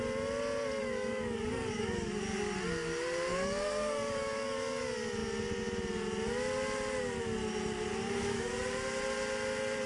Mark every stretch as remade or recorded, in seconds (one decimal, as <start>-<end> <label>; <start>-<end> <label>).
0.0-0.8 recorded; 0.8-2.1 remade; 2.1-3.3 recorded; 3.3-4.8 remade; 4.8-7.9 recorded; 7.9-8.5 remade; 8.5-9.9 recorded